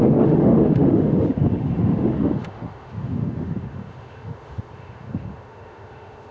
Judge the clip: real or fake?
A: fake